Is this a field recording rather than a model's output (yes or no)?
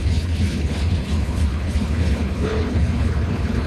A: no